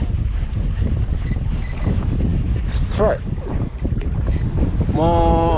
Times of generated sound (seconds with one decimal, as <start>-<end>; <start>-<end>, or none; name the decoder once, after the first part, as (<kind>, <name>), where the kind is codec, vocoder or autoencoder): none